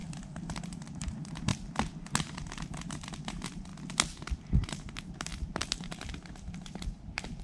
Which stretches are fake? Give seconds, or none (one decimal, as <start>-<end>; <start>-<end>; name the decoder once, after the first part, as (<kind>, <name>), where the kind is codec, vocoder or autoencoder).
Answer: 0.0-1.5 (vocoder, BigVGAN v2); 2.2-3.7; 4.4-7.4